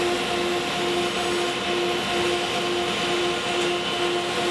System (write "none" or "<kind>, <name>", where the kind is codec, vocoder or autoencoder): none